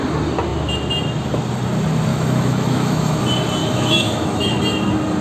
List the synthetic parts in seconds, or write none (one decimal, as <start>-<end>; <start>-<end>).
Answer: 2.1-3.2; 3.6-4.6